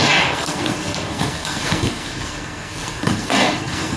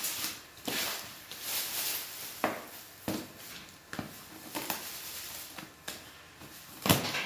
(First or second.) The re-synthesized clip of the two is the first